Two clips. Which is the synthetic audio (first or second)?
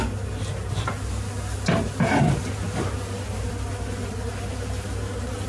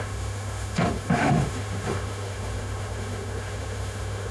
second